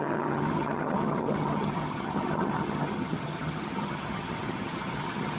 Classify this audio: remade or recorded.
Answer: remade